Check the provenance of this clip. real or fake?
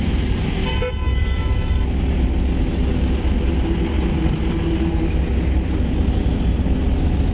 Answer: real